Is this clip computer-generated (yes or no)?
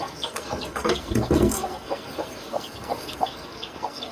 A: yes